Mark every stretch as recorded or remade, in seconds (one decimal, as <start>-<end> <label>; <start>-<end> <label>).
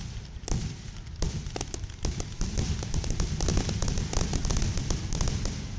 0.0-5.8 recorded